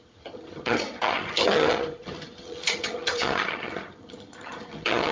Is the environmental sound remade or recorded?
remade